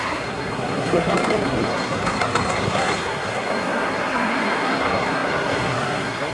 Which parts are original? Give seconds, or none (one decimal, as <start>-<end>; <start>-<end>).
none